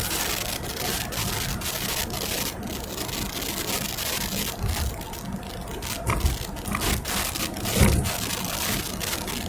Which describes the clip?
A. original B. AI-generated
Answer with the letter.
A